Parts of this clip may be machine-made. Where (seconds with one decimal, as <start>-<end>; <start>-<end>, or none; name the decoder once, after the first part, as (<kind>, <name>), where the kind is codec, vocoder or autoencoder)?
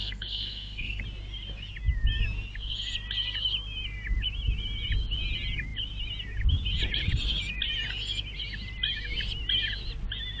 0.0-1.0 (codec, SNAC)